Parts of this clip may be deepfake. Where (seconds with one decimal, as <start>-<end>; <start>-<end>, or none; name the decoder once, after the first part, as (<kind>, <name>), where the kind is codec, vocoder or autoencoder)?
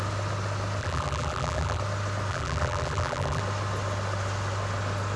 0.8-1.8 (vocoder, BigVGAN v2); 2.3-3.4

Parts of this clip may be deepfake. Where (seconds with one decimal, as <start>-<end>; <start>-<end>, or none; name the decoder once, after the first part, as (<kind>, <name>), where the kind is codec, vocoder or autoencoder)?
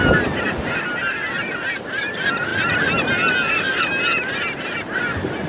none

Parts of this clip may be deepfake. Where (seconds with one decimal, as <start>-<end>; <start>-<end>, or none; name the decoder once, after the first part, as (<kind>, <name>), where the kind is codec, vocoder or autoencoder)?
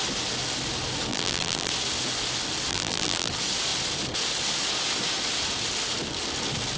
1.1-1.7 (vocoder, BigVGAN v2); 2.7-3.3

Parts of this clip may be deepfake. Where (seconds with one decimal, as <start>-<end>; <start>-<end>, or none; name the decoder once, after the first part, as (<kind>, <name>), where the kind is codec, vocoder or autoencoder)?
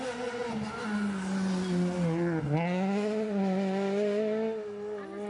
none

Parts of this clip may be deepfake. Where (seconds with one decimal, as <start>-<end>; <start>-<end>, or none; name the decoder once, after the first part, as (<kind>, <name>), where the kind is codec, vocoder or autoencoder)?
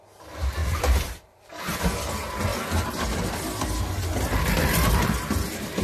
0.6-1.8 (vocoder, BigVGAN v2)